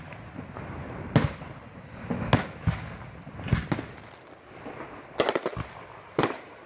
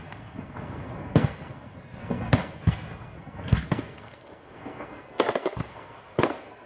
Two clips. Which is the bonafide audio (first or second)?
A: first